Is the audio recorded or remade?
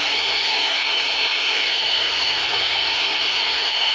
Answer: remade